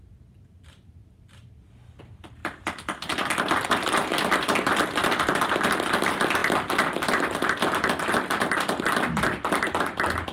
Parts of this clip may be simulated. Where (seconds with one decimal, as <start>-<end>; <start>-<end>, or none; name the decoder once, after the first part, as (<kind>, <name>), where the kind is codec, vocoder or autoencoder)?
none